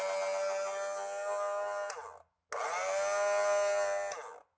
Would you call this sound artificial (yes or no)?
no